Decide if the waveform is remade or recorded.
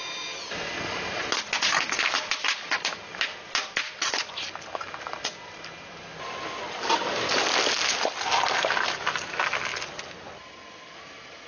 recorded